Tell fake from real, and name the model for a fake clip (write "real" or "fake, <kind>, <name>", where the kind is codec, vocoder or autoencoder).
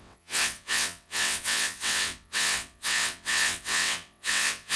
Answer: fake, vocoder, WaveNeXt